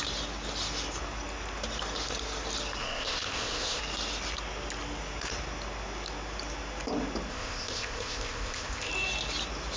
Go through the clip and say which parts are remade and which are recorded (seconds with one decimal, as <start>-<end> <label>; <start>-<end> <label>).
0.0-2.8 recorded; 2.8-3.8 remade; 3.8-7.3 recorded; 7.3-8.9 remade; 8.9-9.8 recorded